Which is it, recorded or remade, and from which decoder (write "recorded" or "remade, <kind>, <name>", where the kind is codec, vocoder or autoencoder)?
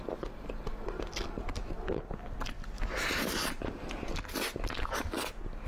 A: recorded